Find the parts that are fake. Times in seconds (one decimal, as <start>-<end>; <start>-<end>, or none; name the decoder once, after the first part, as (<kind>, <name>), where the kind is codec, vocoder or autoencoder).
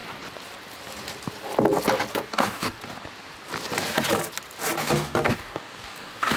2.1-2.8 (codec, DAC); 4.8-6.4